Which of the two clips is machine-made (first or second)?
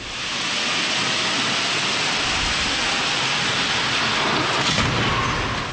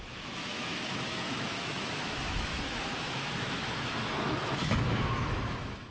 second